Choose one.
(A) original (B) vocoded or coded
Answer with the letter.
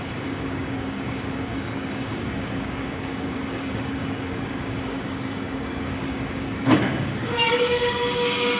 B